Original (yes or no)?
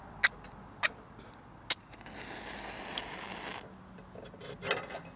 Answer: yes